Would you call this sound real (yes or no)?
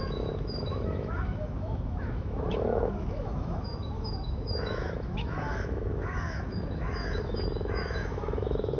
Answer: no